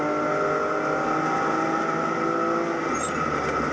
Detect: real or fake real